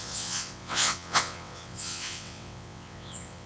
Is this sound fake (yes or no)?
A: yes